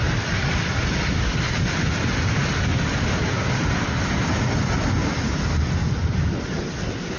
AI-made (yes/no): no